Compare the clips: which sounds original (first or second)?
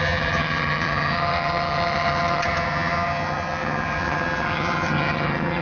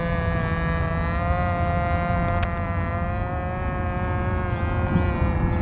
second